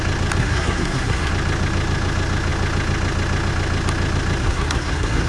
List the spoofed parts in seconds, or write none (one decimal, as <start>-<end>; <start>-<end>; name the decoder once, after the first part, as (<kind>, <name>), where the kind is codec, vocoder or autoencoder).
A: 0.4-1.3 (codec, SNAC); 4.4-5.3